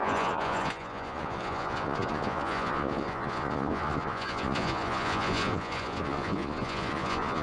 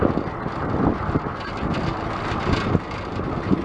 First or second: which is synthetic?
first